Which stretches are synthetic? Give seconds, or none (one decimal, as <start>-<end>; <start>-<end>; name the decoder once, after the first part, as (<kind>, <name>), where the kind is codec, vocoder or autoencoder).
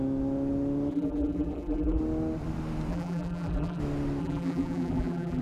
0.9-2.0 (vocoder, BigVGAN v2); 2.9-3.8; 4.2-5.4